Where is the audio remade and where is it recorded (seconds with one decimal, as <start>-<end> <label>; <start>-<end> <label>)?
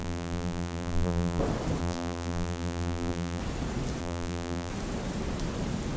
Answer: 0.0-1.4 remade; 1.4-1.8 recorded; 1.8-3.4 remade; 3.4-4.0 recorded; 4.0-4.7 remade; 4.7-6.0 recorded